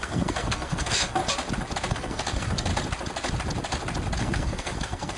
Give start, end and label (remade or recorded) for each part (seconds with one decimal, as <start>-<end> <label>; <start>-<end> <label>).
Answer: 0.0-1.2 remade; 1.2-1.9 recorded; 1.9-2.7 remade; 2.7-4.2 recorded; 4.2-5.2 remade